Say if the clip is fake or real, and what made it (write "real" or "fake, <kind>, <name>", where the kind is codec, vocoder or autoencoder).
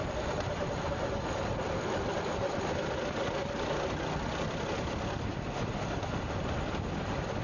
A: real